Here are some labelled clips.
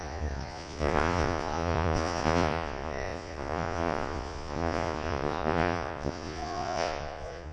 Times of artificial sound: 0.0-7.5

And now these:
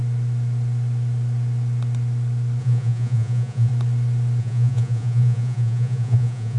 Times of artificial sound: 2.6-3.7; 4.4-6.6

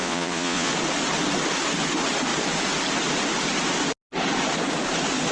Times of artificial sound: 0.0-0.7

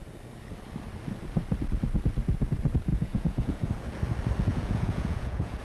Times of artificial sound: 2.9-3.7; 4.5-5.6

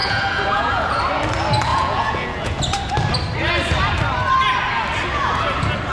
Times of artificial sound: 0.0-1.0; 1.7-2.6